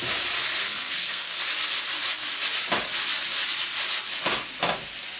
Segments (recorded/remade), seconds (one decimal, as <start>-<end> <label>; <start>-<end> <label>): 0.0-0.6 recorded; 0.6-1.4 remade; 1.4-5.2 recorded